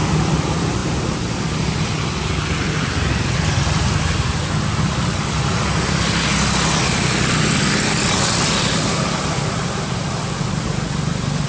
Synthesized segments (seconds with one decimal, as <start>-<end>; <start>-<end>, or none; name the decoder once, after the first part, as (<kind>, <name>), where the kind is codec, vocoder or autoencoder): none